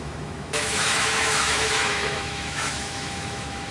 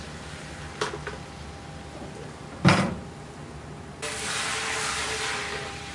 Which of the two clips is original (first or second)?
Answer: second